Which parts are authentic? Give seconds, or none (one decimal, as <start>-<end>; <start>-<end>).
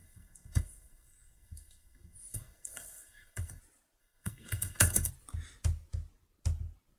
3.6-4.0; 5.1-7.0